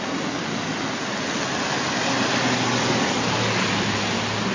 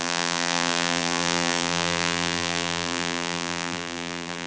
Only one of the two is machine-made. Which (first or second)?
second